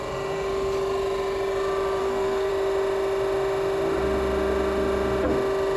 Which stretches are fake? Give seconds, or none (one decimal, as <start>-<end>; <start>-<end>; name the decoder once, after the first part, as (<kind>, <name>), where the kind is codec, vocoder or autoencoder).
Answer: 2.0-2.5 (codec, SNAC)